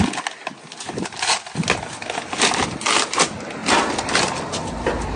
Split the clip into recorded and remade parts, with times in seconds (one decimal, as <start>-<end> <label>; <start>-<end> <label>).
0.0-5.2 recorded